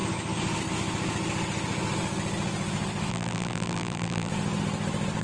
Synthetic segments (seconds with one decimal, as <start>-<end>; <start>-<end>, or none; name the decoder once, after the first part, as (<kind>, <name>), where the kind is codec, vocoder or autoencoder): 3.1-4.3 (vocoder, BigVGAN v2)